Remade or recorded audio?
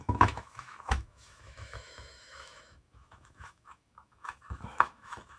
remade